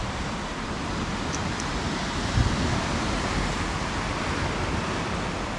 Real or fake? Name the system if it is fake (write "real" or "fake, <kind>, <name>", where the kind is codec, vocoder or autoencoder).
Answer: real